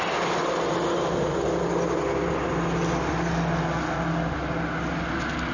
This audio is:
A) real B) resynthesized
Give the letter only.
A